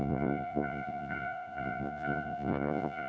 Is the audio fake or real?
fake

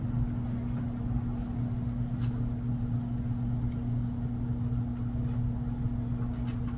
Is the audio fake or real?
real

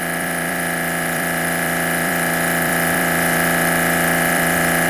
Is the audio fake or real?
fake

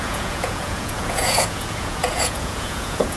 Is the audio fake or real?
fake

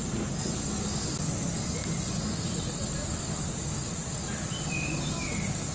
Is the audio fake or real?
real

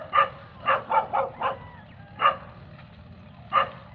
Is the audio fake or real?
real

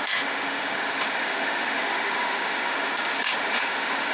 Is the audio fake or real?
fake